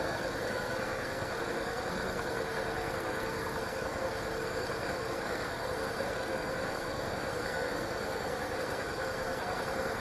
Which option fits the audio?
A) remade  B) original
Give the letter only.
A